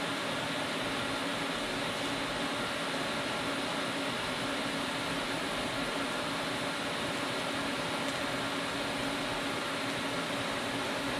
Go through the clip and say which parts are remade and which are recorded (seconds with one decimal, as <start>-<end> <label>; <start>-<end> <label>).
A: 0.0-11.2 recorded